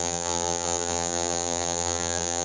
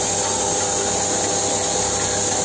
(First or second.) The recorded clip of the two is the second